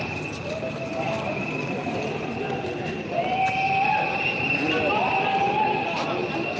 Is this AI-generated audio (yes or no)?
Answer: no